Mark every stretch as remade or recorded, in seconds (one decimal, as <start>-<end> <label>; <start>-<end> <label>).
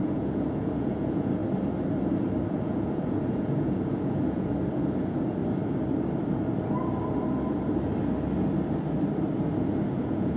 0.0-1.4 remade; 1.4-2.5 recorded; 2.5-5.4 remade; 5.4-9.9 recorded; 9.9-10.4 remade